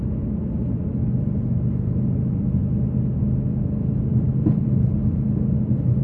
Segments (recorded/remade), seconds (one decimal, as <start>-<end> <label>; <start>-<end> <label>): 0.0-6.0 recorded